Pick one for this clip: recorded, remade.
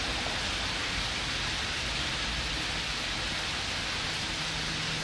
recorded